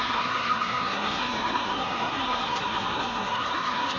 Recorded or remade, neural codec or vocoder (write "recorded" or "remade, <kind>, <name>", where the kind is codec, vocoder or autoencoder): remade, codec, SNAC